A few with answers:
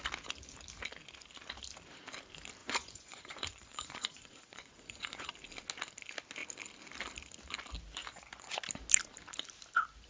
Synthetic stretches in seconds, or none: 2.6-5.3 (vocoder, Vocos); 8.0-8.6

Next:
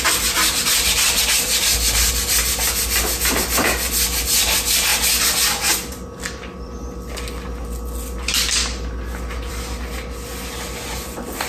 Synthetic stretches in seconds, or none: none

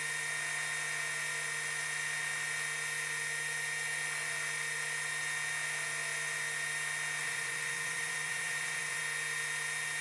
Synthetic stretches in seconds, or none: 7.2-9.0 (vocoder, Vocos)

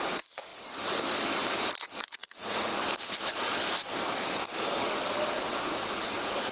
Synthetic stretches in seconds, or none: 0.0-0.5 (vocoder, Vocos); 1.8-2.7; 5.3-6.5

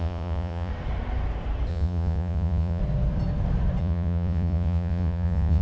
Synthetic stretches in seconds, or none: 0.0-0.7 (vocoder, Vocos); 1.7-2.8; 3.8-5.6